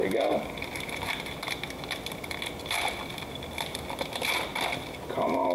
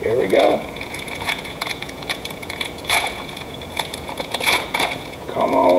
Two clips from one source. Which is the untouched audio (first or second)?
first